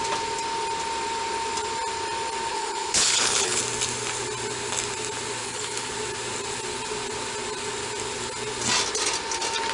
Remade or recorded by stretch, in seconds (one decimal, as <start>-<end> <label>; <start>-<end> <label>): 0.0-2.5 recorded; 2.5-3.6 remade; 3.6-5.4 recorded; 5.4-5.9 remade; 5.9-9.7 recorded